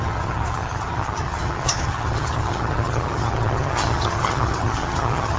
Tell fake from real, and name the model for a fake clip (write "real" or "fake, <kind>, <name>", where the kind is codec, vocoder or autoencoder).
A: fake, vocoder, HiFi-GAN